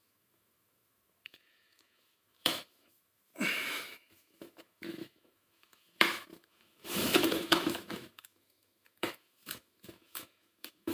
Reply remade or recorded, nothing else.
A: remade